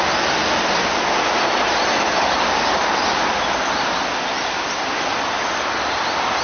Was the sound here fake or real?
fake